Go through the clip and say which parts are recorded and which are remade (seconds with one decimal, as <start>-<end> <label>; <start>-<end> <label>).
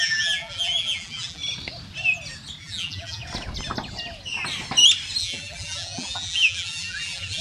0.0-1.4 remade; 1.4-2.6 recorded; 2.6-3.2 remade; 3.2-5.2 recorded; 5.2-7.4 remade